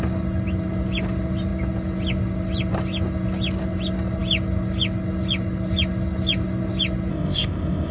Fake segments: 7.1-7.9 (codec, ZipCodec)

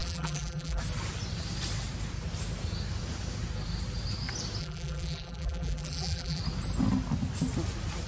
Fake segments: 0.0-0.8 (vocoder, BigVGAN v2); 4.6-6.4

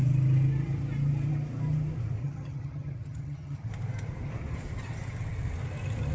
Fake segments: 2.2-3.7 (vocoder, HiFi-GAN)